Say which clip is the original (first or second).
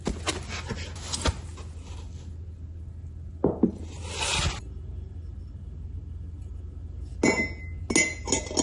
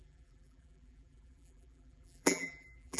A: first